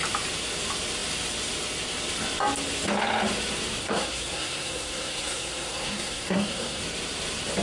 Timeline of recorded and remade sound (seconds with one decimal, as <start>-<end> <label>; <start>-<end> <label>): 0.0-3.8 recorded; 3.8-6.8 remade; 6.8-7.6 recorded